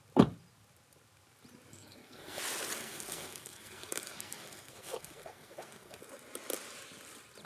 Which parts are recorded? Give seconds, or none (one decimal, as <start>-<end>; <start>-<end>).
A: 0.0-1.7; 2.4-2.8; 6.0-7.5